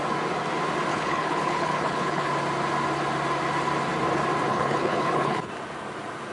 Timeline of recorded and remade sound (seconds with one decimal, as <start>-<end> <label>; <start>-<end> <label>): 0.0-0.9 recorded; 0.9-2.3 remade; 2.3-4.5 recorded; 4.5-5.5 remade; 5.5-6.3 recorded